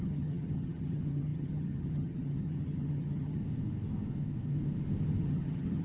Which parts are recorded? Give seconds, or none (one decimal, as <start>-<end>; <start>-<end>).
3.4-5.2